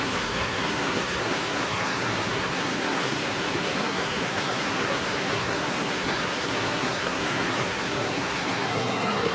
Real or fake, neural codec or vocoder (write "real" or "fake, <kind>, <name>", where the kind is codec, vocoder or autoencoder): fake, codec, SNAC